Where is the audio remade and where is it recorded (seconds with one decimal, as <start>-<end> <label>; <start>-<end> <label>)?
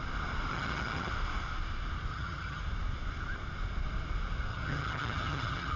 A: 0.0-0.5 recorded; 0.5-1.1 remade; 1.1-2.1 recorded; 2.1-2.6 remade; 2.6-4.5 recorded; 4.5-5.8 remade